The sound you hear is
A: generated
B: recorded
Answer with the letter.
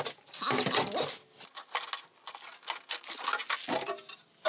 B